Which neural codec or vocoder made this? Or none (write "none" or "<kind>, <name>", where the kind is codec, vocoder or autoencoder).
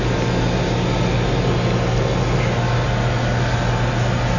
none